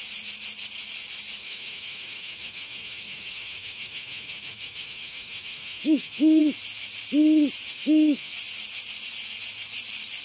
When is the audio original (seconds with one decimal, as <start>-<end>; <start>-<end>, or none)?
0.0-1.4; 6.4-7.7; 8.3-10.2